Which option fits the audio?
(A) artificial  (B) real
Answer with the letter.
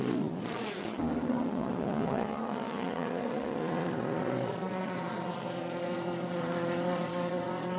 A